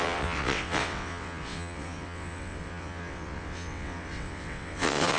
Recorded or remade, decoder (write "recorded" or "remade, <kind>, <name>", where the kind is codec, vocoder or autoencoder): remade, vocoder, WaveNeXt